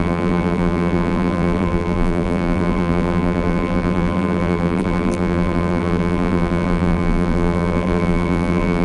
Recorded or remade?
remade